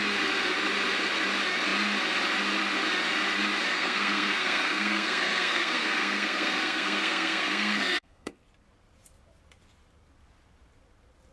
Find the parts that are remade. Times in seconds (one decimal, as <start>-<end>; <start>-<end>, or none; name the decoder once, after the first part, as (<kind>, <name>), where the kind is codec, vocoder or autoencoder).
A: 3.7-8.3 (codec, SNAC)